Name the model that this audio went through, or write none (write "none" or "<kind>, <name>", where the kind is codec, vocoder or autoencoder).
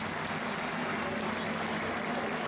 none